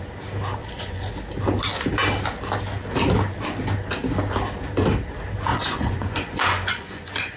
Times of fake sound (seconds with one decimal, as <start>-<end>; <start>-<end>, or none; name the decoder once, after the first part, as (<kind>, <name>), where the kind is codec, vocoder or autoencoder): 0.6-1.1 (vocoder, Vocos); 5.5-7.4